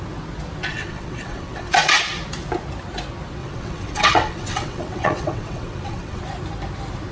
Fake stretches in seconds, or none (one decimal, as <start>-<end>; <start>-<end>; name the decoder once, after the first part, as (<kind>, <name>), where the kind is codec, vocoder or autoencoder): 0.7-2.0 (vocoder, WaveNeXt); 3.4-6.2